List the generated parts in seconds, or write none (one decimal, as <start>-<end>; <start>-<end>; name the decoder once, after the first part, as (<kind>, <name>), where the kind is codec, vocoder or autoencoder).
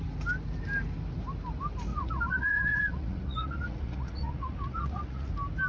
1.9-5.3 (vocoder, Vocos)